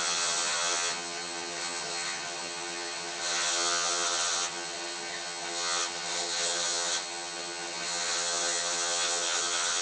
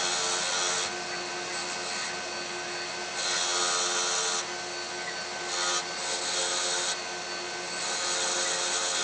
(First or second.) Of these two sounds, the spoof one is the first